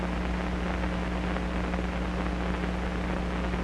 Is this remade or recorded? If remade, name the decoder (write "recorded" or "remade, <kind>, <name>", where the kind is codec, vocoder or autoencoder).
recorded